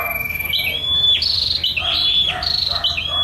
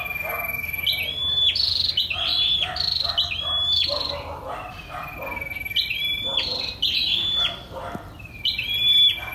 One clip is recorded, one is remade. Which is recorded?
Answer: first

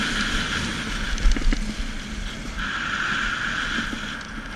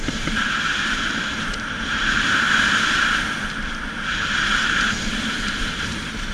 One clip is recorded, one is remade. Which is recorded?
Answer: first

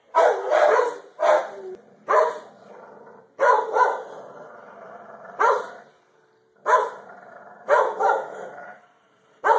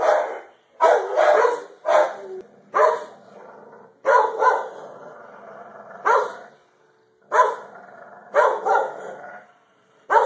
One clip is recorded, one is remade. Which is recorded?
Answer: second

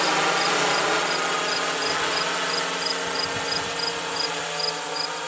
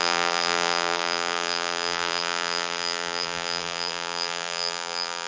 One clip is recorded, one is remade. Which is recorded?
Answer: first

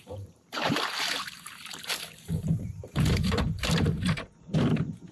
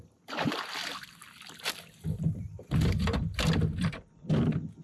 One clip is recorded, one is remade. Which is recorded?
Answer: second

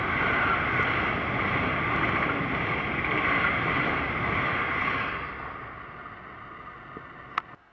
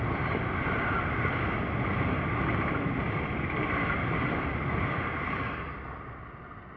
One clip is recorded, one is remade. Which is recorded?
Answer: first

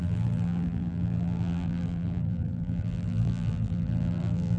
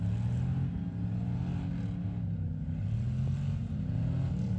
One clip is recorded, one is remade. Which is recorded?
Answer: second